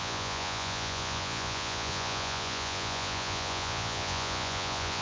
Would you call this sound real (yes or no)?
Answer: no